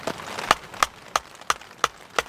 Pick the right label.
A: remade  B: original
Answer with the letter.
B